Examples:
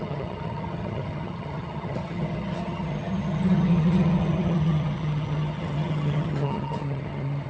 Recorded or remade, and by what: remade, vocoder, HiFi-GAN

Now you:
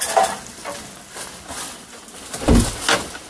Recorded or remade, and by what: recorded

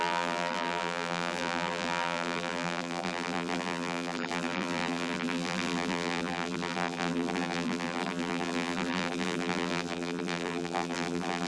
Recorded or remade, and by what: remade, vocoder, BigVGAN v2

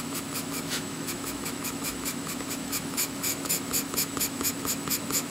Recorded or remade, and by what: remade, autoencoder, DAC-VAE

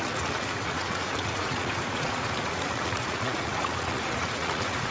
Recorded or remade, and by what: remade, vocoder, Vocos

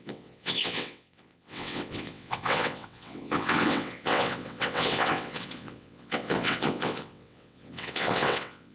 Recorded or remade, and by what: remade, vocoder, WaveNeXt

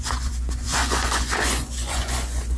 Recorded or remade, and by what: remade, vocoder, Vocos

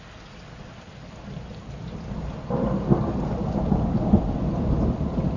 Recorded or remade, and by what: recorded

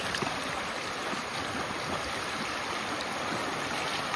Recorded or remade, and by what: recorded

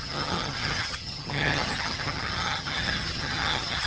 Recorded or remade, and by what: remade, vocoder, HiFi-GAN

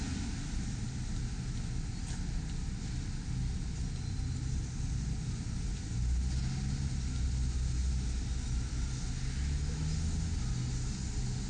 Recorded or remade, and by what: recorded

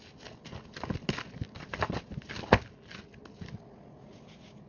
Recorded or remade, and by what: recorded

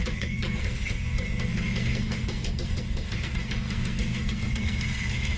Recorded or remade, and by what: remade, codec, SNAC